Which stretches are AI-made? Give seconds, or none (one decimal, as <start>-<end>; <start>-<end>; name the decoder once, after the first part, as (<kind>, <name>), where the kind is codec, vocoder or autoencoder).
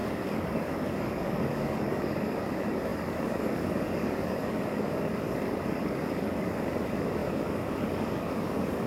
0.0-8.9 (codec, DAC)